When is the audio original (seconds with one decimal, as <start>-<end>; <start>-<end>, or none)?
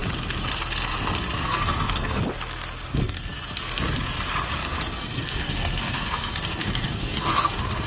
0.0-1.4; 2.2-2.9; 3.8-4.6